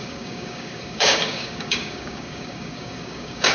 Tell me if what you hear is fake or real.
fake